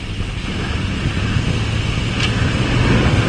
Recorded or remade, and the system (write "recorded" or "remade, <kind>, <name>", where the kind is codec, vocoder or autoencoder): recorded